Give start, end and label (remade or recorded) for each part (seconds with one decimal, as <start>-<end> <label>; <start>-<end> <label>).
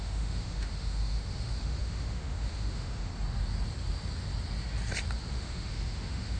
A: 0.0-3.1 remade; 3.1-5.3 recorded; 5.3-6.4 remade